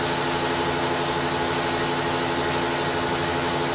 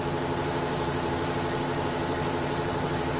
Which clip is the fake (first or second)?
second